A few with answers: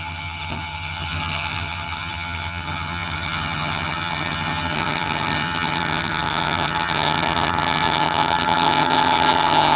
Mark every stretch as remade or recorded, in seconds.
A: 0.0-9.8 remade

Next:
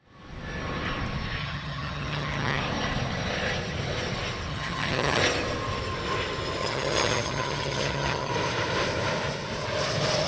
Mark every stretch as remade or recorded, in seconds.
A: 0.0-1.4 recorded; 1.4-2.6 remade; 2.6-4.5 recorded; 4.5-5.2 remade; 5.2-6.6 recorded; 6.6-8.3 remade; 8.3-10.3 recorded

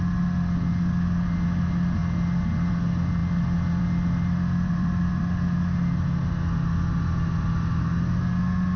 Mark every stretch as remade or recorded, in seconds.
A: 0.0-8.8 recorded

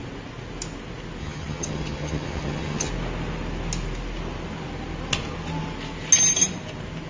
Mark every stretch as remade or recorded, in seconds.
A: 0.0-1.2 recorded; 1.2-2.9 remade; 2.9-7.1 recorded

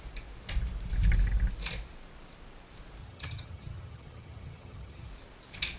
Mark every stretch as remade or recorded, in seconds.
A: 0.0-3.0 recorded; 3.0-5.1 remade; 5.1-5.8 recorded

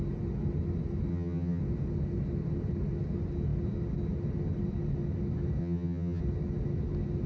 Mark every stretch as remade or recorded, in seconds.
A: 0.0-1.1 recorded; 1.1-1.6 remade; 1.6-5.6 recorded; 5.6-6.2 remade; 6.2-7.3 recorded